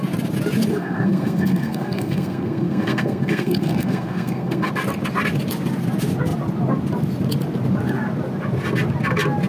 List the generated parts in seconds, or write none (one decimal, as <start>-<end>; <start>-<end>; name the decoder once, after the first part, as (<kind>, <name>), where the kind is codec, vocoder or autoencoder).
0.7-4.7 (codec, SNAC)